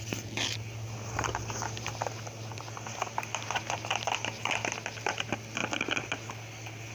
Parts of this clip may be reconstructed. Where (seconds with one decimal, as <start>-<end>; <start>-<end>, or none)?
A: none